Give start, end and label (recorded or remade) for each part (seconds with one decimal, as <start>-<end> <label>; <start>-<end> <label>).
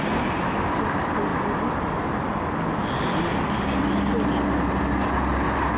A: 0.0-5.8 recorded